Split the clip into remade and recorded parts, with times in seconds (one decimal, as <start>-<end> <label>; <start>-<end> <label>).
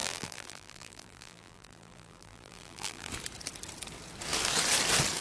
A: 0.0-3.1 remade; 3.1-5.2 recorded